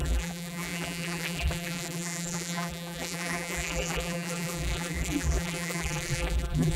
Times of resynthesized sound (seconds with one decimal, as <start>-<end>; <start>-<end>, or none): 0.0-6.8